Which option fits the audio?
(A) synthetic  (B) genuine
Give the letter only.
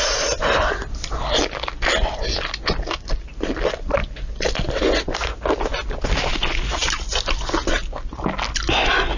B